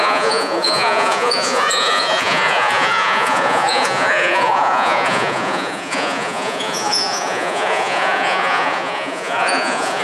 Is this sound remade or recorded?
remade